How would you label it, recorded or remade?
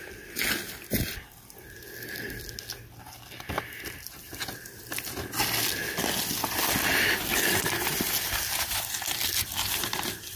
recorded